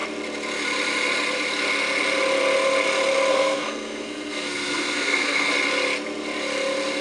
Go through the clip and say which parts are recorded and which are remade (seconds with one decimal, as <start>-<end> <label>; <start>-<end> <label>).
0.0-3.3 recorded; 3.3-5.5 remade; 5.5-7.0 recorded